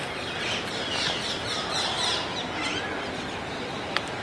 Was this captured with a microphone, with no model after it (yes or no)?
yes